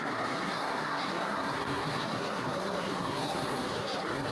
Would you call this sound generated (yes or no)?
yes